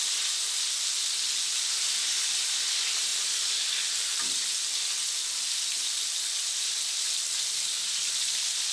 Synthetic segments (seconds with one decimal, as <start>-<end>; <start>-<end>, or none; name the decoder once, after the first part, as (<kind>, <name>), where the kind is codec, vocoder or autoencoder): none